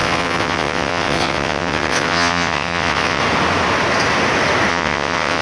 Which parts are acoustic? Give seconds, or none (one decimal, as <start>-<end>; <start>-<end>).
3.2-4.7